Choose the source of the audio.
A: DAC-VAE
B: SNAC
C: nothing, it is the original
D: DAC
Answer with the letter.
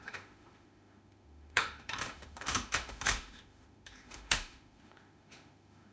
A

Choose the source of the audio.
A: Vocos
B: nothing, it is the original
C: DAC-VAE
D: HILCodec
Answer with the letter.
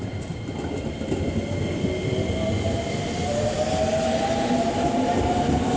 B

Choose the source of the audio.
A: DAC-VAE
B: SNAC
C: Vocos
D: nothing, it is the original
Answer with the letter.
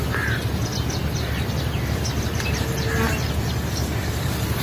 D